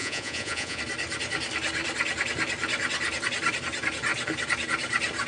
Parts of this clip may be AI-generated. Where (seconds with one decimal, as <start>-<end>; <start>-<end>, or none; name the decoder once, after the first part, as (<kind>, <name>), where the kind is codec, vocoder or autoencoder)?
0.0-0.8 (vocoder, Vocos)